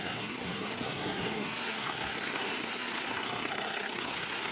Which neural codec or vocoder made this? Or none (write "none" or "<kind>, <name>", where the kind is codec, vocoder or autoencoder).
codec, SNAC